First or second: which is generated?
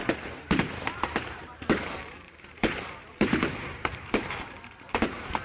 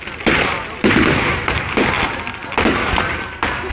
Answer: first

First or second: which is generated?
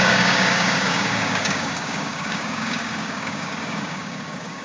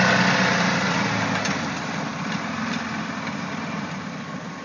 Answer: first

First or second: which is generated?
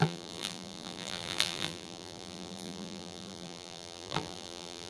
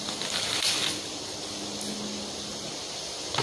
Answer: first